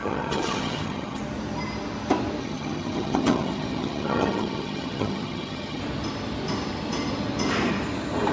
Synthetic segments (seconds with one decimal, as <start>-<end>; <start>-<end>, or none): 0.0-1.2; 2.4-5.8